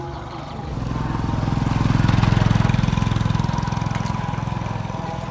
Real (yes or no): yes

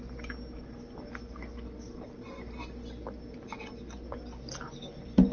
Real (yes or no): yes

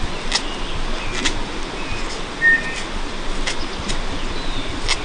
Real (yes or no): yes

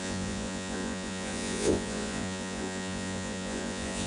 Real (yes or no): no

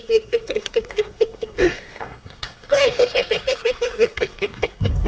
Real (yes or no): no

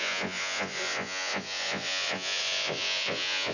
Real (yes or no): no